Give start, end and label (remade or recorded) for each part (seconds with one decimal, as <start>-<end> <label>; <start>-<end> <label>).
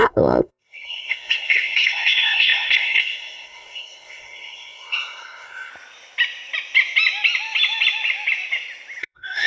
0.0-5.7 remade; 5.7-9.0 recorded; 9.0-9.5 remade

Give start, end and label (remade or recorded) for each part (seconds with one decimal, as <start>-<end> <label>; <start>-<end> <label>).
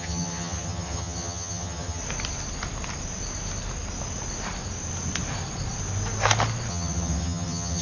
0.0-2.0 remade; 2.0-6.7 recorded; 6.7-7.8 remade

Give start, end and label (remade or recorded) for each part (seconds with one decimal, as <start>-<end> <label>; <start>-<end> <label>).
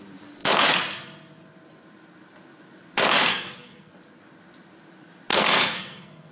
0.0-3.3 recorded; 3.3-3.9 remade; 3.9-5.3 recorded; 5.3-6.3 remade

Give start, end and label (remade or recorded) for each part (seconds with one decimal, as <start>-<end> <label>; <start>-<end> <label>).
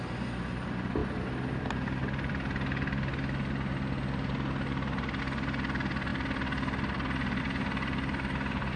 0.0-8.8 recorded